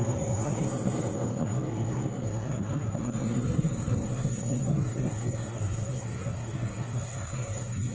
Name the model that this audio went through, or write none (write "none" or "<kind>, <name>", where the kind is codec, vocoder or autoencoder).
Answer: codec, SNAC